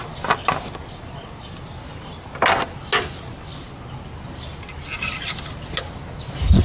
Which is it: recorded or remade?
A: recorded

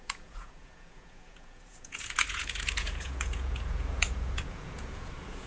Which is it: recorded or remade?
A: remade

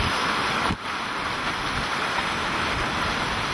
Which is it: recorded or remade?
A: recorded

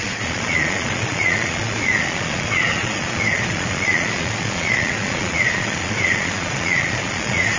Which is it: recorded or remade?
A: remade